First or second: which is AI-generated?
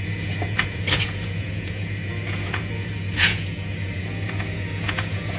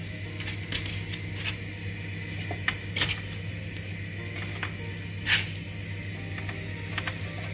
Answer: first